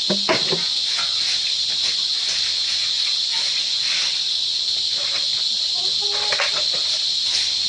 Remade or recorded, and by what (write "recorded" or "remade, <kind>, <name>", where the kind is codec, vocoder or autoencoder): recorded